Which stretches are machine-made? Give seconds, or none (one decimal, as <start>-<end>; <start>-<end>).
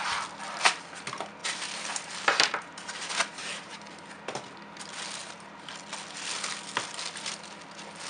1.4-3.7; 5.2-5.7